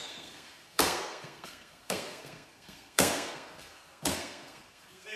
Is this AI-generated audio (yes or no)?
yes